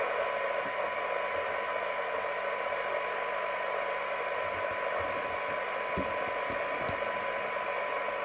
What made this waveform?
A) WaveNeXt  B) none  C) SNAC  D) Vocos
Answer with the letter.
B